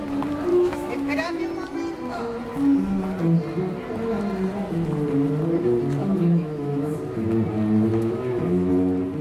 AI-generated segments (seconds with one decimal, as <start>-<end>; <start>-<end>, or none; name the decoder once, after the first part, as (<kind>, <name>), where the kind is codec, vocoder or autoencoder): 0.5-1.4 (autoencoder, DAC-VAE); 6.0-6.9; 7.9-8.7